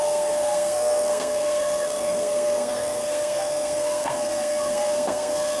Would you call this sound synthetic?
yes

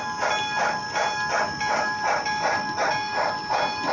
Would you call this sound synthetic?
no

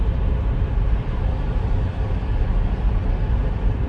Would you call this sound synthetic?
no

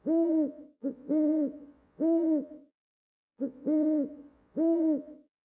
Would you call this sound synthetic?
yes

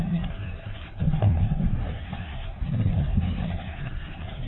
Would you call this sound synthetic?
yes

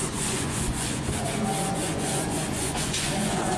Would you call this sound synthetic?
yes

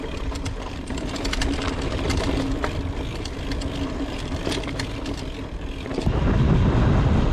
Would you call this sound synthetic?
no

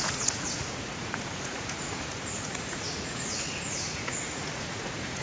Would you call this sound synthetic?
yes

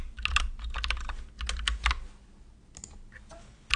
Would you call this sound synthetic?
no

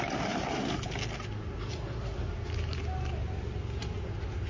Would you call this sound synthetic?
no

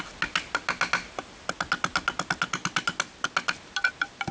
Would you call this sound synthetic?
no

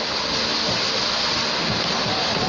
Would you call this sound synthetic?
no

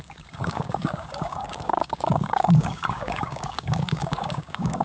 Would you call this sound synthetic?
yes